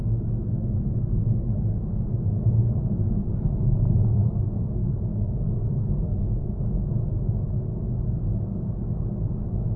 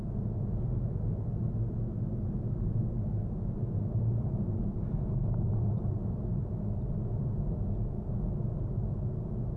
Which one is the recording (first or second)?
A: second